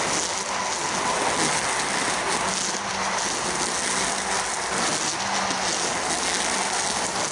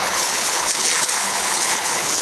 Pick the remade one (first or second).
second